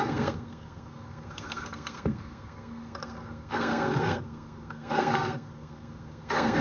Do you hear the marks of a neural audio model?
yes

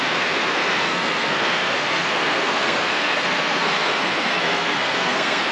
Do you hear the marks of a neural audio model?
yes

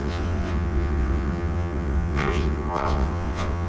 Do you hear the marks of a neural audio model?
yes